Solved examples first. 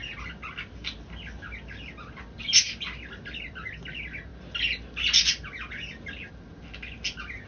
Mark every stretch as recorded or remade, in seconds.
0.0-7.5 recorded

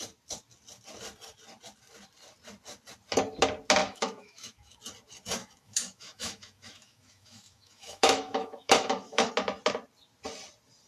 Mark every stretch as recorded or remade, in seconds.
0.0-3.8 recorded; 3.8-4.8 remade; 4.8-5.4 recorded; 5.4-9.3 remade; 9.3-10.9 recorded

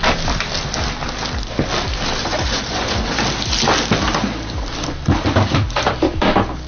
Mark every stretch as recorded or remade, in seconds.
0.0-2.2 recorded; 2.2-3.2 remade; 3.2-6.7 recorded

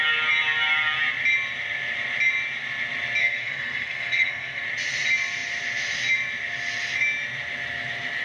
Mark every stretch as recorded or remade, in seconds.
0.0-3.2 recorded; 3.2-4.6 remade; 4.6-8.2 recorded

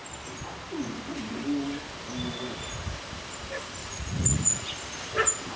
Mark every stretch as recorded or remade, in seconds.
0.0-3.8 recorded; 3.8-4.7 remade; 4.7-5.6 recorded